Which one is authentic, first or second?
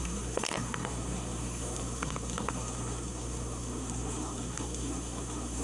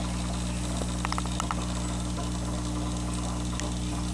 second